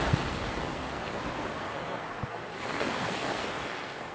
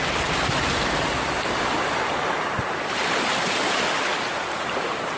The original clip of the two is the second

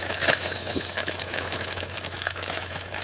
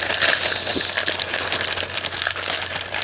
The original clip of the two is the second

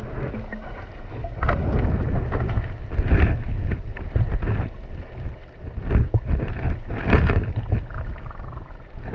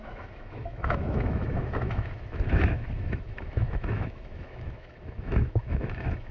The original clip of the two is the first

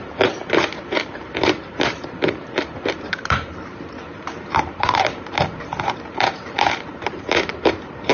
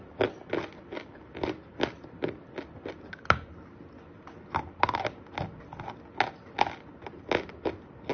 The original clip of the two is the second